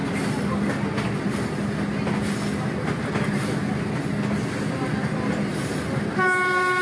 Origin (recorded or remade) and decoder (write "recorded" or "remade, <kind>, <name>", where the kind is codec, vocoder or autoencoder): recorded